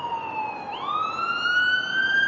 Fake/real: real